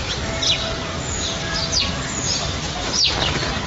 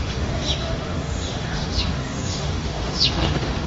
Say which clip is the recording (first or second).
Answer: first